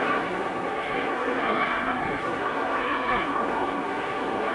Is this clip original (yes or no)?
no